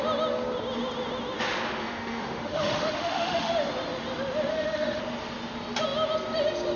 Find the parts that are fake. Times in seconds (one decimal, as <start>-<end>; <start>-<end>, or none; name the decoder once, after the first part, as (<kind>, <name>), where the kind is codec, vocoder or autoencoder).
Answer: 1.8-3.5 (autoencoder, DAC-VAE); 4.5-5.0